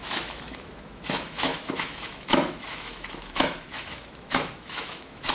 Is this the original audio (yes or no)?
no